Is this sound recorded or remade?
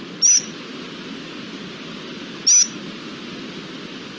recorded